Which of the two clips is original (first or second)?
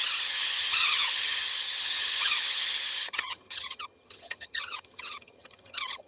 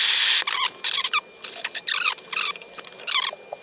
second